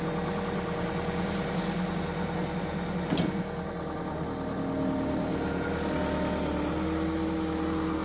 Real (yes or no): yes